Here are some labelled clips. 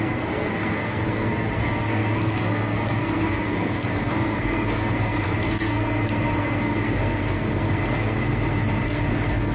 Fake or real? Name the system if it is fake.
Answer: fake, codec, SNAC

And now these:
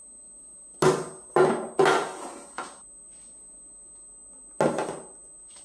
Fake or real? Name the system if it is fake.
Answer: real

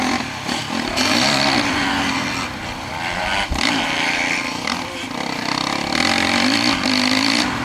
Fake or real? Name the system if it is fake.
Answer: fake, vocoder, BigVGAN v2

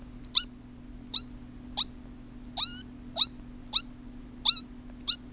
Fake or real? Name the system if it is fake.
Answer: real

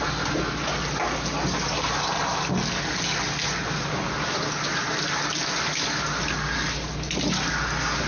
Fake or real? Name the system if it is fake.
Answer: real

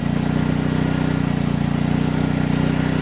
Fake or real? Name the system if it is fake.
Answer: real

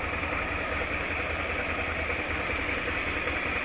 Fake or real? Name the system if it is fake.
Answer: real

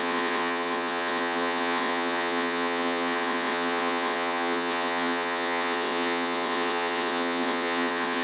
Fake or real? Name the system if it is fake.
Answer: fake, vocoder, WaveNeXt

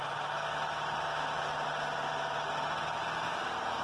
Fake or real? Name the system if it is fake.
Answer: real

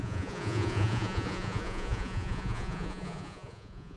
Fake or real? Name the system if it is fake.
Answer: fake, vocoder, Vocos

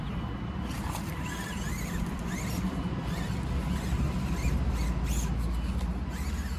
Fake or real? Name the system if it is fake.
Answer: real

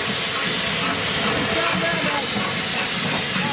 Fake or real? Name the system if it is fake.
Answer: real